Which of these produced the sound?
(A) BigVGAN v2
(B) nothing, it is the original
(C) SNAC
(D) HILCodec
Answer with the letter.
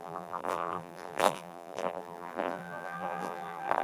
A